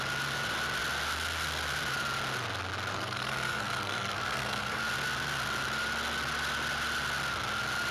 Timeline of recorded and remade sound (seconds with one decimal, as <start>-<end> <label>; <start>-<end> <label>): 0.0-2.9 recorded; 2.9-4.8 remade; 4.8-7.9 recorded